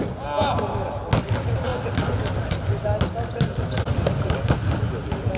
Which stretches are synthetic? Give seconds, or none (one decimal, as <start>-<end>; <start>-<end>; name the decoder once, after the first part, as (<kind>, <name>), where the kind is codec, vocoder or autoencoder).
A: none